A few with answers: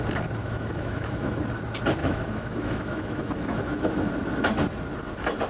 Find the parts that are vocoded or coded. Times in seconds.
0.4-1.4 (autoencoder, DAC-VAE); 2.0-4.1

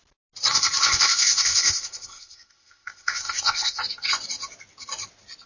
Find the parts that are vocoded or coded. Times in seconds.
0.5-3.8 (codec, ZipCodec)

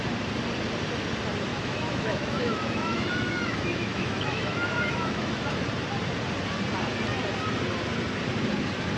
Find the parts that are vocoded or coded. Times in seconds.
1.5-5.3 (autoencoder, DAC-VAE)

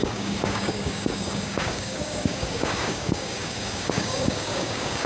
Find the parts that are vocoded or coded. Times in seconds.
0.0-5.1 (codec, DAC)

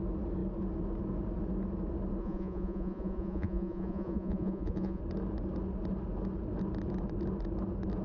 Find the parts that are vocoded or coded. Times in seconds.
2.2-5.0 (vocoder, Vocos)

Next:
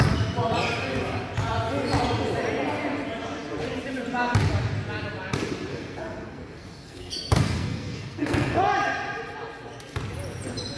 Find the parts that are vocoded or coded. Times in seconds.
5.7-8.6 (codec, SNAC)

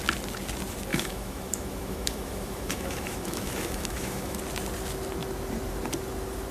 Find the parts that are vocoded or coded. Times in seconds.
0.9-4.4 (autoencoder, DAC-VAE)